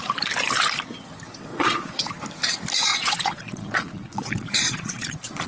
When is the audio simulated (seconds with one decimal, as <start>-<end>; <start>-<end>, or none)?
1.5-2.1; 2.9-5.5